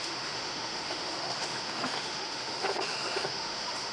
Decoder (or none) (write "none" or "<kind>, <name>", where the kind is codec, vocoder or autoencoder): autoencoder, DAC-VAE